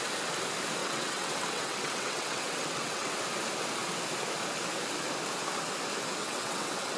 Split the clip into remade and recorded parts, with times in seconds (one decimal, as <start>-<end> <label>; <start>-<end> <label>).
0.0-0.8 recorded; 0.8-3.2 remade; 3.2-6.2 recorded; 6.2-7.0 remade